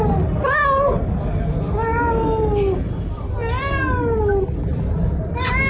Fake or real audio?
real